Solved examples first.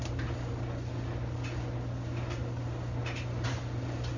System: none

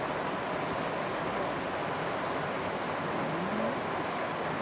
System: none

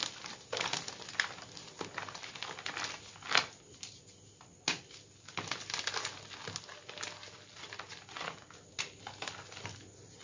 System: none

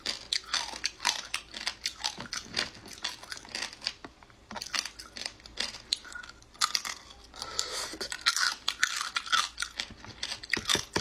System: none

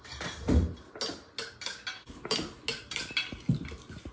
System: none